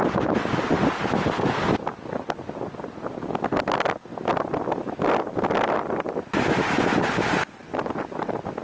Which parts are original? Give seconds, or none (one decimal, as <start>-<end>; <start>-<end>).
0.0-8.6